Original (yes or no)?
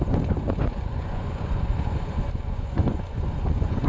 no